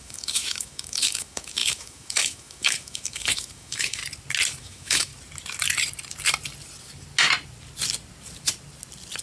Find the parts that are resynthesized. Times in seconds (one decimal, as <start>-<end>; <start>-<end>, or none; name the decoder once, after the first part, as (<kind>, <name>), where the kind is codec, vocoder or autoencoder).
0.0-4.0 (autoencoder, DAC-VAE); 4.6-5.1